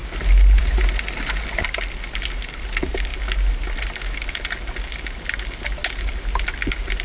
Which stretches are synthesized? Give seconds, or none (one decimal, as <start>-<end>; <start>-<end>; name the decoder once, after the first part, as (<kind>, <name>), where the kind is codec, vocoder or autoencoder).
none